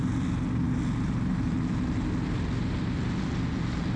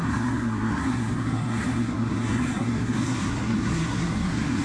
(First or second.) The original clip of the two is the first